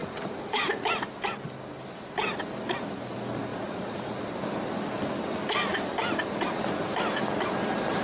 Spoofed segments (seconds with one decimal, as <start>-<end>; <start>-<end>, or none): 0.0-0.6; 3.5-4.2